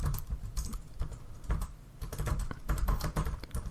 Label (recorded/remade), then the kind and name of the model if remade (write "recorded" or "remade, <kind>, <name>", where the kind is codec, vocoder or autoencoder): remade, vocoder, BigVGAN v2